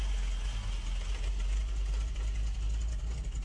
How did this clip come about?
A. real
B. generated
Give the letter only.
A